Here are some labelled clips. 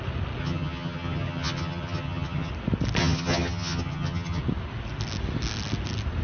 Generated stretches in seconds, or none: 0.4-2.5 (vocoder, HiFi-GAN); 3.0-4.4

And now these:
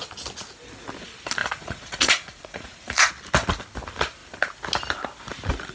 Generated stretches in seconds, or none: 1.4-3.1 (vocoder, Vocos)